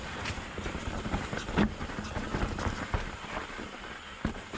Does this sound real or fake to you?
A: real